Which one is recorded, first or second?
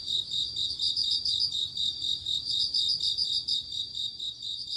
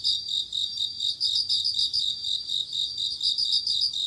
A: second